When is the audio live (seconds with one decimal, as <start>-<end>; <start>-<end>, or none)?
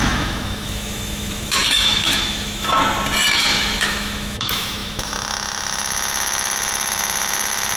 2.8-3.4